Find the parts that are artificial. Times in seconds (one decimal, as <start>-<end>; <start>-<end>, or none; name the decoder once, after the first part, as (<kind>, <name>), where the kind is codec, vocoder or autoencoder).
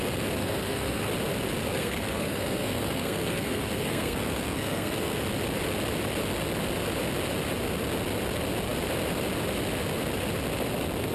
0.4-1.0 (codec, SNAC); 1.7-5.2